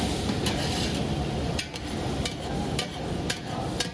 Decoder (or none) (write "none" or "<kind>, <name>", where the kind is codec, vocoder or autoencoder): vocoder, BigVGAN v2